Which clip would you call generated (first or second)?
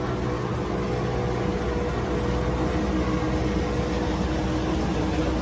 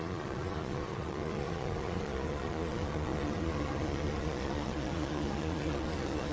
second